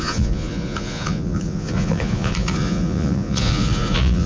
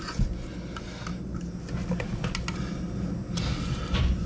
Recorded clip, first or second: second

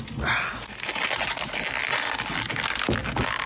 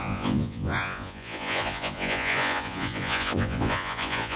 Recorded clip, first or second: first